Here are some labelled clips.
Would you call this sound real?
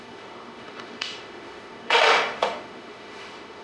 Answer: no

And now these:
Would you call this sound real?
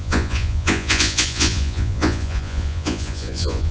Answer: no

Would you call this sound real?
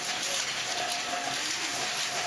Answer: yes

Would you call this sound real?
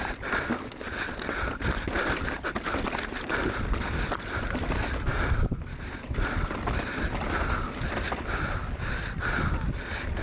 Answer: yes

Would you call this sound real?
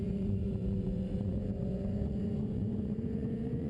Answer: no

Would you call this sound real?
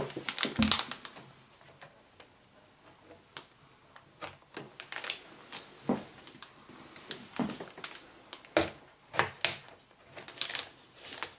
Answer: yes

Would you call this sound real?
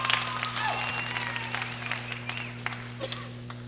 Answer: yes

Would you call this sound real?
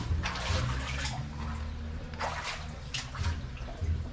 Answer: yes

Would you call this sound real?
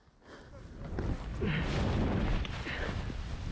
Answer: yes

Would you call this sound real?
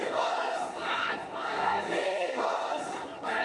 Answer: no